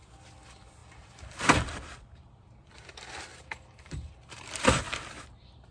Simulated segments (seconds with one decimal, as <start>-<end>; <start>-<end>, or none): 0.8-2.7; 3.3-4.9